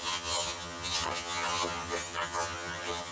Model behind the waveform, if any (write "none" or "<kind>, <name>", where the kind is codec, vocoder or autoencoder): vocoder, HiFi-GAN